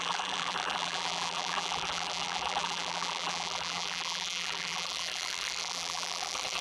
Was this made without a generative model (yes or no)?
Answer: no